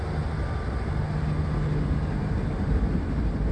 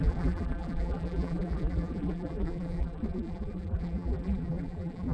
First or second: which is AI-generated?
second